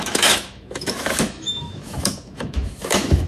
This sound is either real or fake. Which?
fake